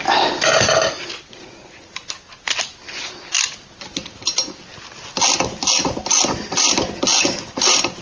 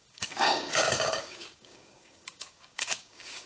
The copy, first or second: second